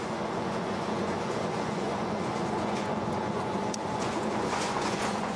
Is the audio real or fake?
fake